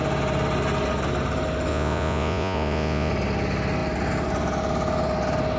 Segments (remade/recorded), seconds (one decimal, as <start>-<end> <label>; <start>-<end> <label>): 0.0-1.7 recorded; 1.7-3.1 remade; 3.1-5.6 recorded